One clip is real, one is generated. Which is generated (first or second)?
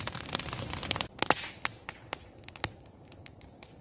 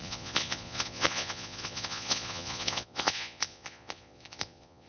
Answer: second